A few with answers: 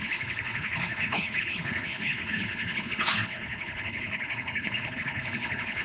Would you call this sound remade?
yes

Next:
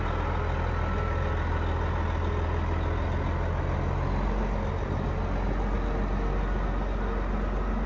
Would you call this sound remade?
no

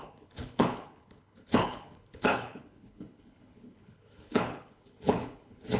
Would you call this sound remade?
yes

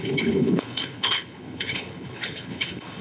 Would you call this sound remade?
yes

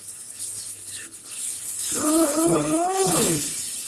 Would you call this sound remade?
yes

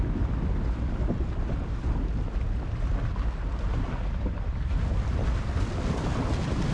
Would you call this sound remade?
no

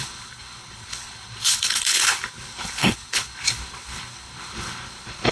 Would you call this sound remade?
yes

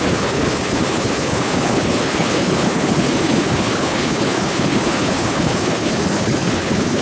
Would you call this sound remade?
yes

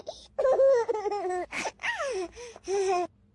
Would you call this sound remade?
no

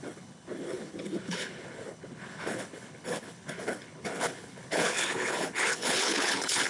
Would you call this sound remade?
yes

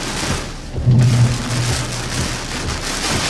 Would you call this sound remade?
no